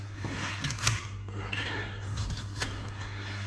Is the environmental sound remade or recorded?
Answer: remade